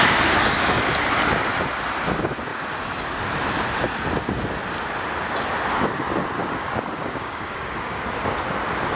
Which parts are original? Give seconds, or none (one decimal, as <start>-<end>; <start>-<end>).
0.0-6.4; 8.1-9.0